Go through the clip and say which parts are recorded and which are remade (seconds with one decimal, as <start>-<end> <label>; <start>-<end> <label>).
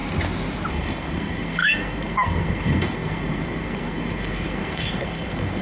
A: 0.0-0.7 recorded; 0.7-5.6 remade